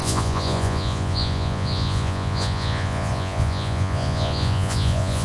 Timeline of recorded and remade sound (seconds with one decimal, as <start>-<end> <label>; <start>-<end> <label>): 0.0-5.2 remade